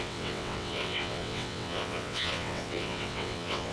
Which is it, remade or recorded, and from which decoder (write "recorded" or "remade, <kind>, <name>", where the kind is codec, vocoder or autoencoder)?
remade, vocoder, WaveNeXt